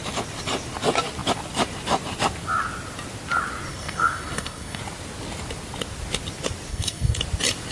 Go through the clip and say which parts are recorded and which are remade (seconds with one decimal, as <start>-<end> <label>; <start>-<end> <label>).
0.0-3.7 recorded; 3.7-4.8 remade; 4.8-6.7 recorded; 6.7-7.2 remade; 7.2-7.7 recorded